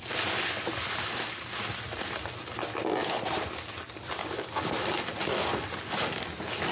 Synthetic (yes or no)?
no